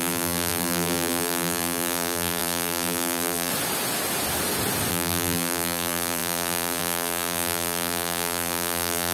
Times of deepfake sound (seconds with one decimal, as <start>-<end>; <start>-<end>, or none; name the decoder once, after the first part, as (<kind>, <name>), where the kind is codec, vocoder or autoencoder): 0.0-3.5 (vocoder, BigVGAN v2); 4.9-9.1